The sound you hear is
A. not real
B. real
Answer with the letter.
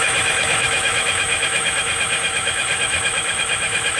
A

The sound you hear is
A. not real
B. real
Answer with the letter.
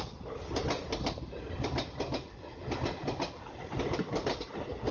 B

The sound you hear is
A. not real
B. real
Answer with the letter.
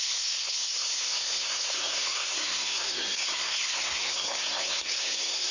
A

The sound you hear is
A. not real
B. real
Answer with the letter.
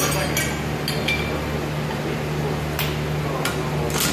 B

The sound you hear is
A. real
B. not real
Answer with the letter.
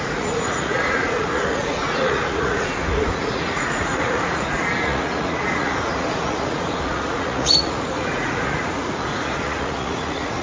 B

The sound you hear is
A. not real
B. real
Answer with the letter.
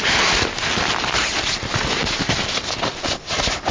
B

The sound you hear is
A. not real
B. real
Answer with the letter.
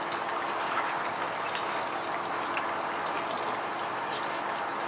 B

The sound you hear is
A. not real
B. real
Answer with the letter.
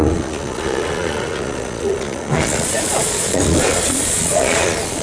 A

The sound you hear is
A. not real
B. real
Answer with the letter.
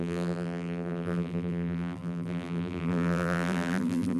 A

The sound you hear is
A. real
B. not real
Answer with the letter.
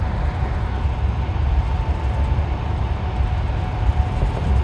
A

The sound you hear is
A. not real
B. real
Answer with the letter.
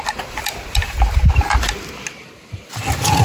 B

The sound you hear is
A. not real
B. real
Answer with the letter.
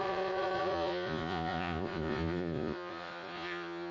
A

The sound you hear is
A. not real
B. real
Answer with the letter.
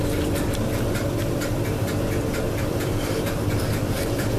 A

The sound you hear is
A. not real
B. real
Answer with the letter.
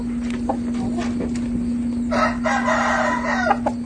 B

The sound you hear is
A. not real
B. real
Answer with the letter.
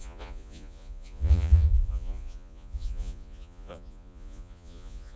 A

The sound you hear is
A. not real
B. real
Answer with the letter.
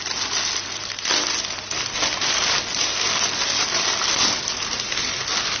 B